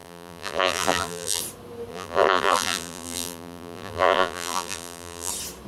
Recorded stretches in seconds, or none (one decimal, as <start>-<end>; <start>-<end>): 1.4-1.9; 5.3-5.7